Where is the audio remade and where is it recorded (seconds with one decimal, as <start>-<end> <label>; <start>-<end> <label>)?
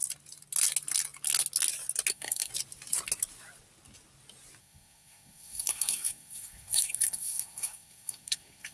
0.0-2.1 recorded; 2.1-2.5 remade; 2.5-4.6 recorded; 4.6-8.7 remade